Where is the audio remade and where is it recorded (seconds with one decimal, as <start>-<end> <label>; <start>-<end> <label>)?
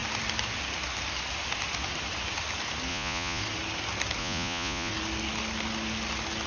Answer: 0.0-2.9 recorded; 2.9-3.4 remade; 3.4-4.2 recorded; 4.2-4.9 remade; 4.9-6.5 recorded